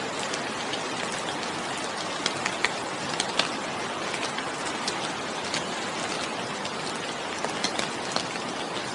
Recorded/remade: recorded